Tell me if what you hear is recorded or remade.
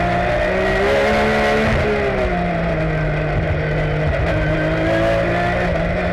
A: recorded